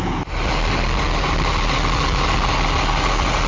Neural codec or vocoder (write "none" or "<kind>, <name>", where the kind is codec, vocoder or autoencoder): none